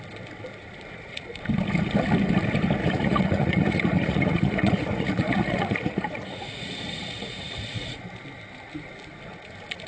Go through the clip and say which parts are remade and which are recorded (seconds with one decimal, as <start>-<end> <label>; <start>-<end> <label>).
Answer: 0.0-0.6 recorded; 0.6-1.4 remade; 1.4-2.8 recorded; 2.8-8.0 remade; 8.0-9.9 recorded